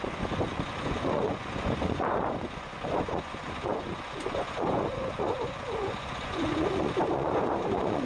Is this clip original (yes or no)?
no